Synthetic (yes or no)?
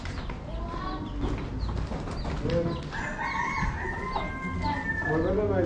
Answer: no